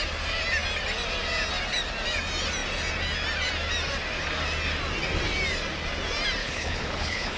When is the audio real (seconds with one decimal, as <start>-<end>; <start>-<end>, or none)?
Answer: 0.0-6.4